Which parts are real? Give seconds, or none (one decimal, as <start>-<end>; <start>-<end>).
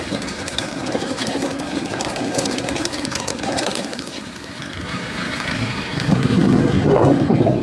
none